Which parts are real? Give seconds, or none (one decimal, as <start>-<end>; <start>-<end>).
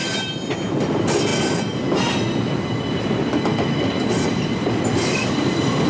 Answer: 0.0-0.7